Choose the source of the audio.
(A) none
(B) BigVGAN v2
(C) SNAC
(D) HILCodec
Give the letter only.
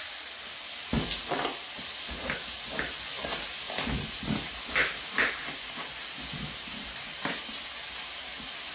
A